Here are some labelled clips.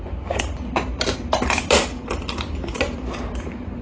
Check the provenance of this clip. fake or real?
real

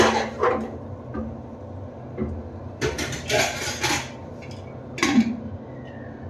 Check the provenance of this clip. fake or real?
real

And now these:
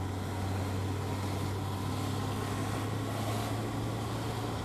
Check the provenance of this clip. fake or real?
real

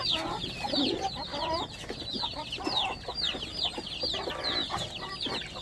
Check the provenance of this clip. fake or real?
real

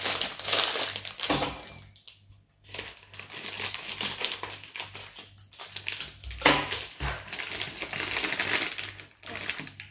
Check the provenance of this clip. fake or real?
real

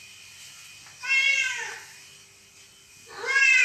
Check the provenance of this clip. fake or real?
real